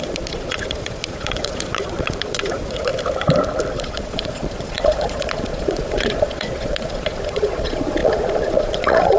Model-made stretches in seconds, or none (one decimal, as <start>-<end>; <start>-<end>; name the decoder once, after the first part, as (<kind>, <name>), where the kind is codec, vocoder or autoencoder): 0.0-2.9 (vocoder, Vocos); 3.7-9.2